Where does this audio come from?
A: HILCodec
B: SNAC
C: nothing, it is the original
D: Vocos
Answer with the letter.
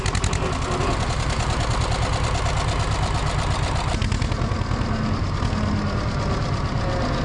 C